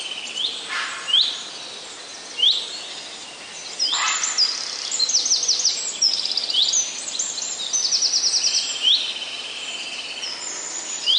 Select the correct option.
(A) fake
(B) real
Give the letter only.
B